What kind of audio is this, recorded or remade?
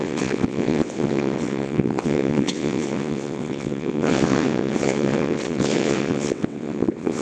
remade